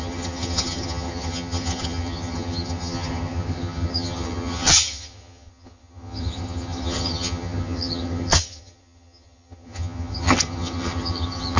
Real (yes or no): no